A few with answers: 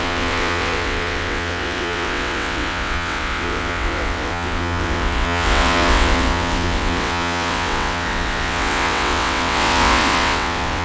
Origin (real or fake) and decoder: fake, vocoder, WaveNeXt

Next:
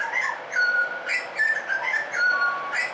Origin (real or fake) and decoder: real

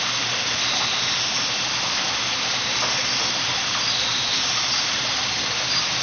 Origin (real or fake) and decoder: real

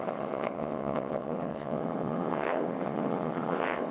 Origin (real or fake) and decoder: fake, vocoder, WaveNeXt